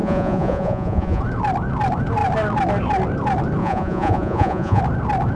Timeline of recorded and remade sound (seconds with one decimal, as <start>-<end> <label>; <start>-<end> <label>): 0.0-1.2 remade; 1.2-3.6 recorded; 3.6-4.8 remade; 4.8-5.4 recorded

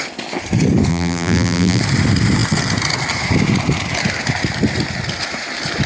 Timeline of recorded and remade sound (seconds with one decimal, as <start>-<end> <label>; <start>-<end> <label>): 0.0-0.9 recorded; 0.9-1.8 remade; 1.8-5.9 recorded

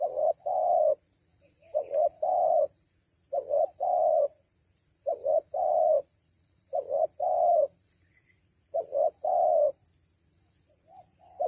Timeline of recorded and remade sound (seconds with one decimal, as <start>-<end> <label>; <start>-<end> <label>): 0.0-9.6 remade; 9.6-10.2 recorded; 10.2-11.5 remade

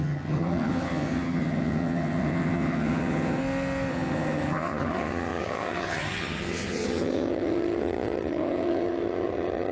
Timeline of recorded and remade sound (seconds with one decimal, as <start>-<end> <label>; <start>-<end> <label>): 0.0-3.4 remade; 3.4-3.9 recorded; 3.9-9.7 remade

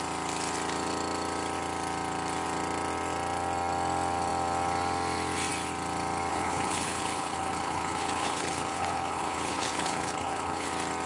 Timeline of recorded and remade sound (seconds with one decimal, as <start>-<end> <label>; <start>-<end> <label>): 0.0-6.3 recorded; 6.3-10.7 remade; 10.7-11.1 recorded